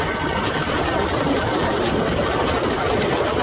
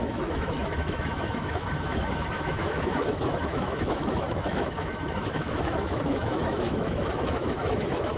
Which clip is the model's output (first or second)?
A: second